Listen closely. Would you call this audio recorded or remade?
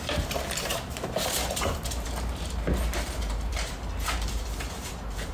remade